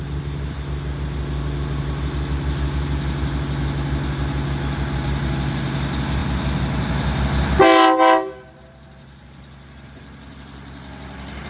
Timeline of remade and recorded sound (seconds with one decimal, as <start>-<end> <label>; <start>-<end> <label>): 0.0-11.5 recorded